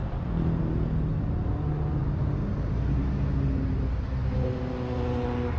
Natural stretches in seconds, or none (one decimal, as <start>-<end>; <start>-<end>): 0.6-5.6